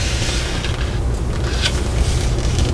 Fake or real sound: real